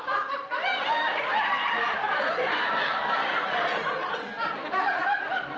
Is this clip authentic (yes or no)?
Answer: yes